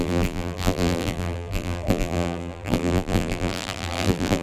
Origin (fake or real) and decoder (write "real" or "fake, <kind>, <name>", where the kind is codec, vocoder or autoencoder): fake, vocoder, BigVGAN v2